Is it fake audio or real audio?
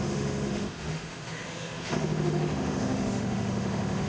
fake